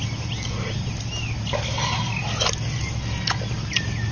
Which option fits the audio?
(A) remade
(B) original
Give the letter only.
B